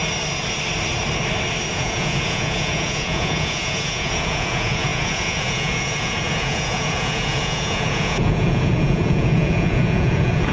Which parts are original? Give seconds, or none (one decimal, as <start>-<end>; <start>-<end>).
0.0-1.7